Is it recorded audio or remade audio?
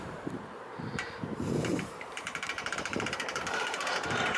remade